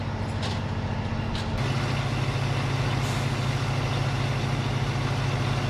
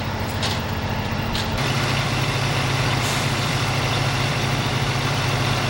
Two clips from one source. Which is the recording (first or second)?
first